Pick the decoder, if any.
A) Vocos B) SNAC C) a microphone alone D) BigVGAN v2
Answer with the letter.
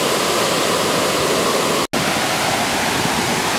C